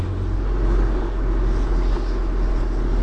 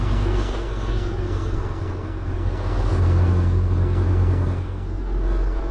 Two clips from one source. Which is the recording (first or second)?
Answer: first